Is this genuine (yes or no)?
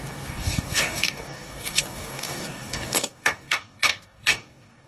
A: no